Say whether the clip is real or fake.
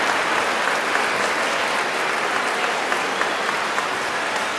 real